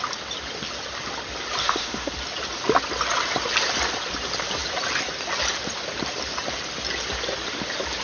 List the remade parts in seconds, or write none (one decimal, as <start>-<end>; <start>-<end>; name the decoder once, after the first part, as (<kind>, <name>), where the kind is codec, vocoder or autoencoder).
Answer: 1.6-2.1 (autoencoder, DAC-VAE)